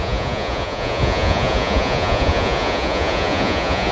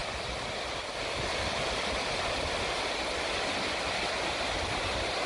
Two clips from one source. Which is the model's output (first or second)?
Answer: first